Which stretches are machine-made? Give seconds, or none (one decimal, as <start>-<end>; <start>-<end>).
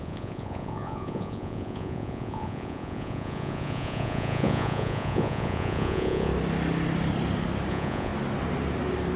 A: 0.0-6.3; 7.7-8.1